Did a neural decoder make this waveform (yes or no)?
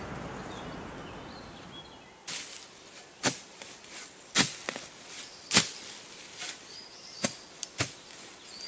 no